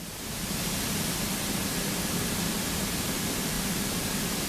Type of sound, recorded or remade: recorded